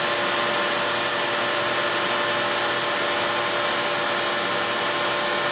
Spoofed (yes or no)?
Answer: no